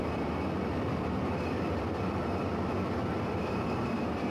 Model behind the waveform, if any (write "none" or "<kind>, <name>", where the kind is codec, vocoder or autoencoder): vocoder, BigVGAN v2